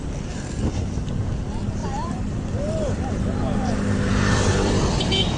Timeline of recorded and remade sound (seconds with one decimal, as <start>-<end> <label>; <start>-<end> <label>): 0.0-1.8 recorded; 1.8-4.9 remade; 4.9-5.4 recorded